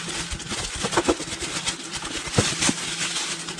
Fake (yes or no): no